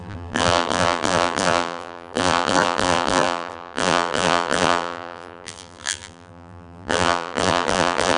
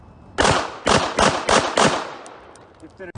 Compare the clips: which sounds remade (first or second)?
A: first